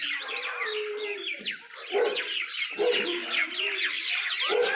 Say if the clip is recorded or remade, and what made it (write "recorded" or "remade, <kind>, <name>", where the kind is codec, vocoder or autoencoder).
recorded